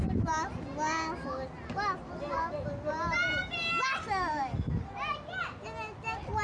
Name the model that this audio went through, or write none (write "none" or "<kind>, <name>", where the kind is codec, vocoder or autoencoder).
none